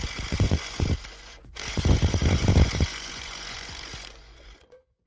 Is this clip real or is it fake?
fake